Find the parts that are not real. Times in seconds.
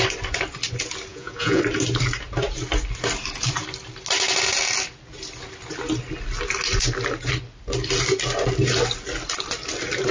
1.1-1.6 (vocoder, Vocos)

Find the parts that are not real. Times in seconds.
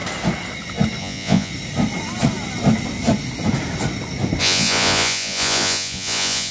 1.0-1.5 (vocoder, Vocos); 4.4-6.5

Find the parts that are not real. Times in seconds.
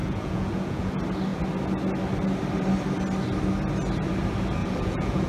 0.0-0.9 (vocoder, Vocos); 4.6-5.3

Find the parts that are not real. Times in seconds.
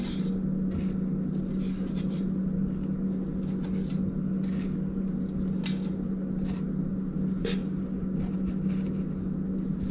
none